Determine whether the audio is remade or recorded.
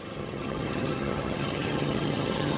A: remade